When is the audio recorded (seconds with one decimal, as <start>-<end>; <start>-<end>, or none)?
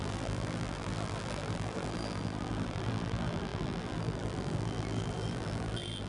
none